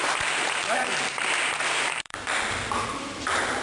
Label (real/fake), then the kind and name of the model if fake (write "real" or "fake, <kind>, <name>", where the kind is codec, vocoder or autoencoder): fake, vocoder, BigVGAN v2